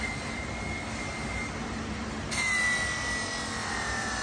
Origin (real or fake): real